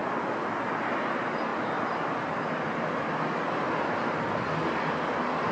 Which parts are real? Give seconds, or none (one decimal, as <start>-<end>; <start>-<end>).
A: 0.0-5.5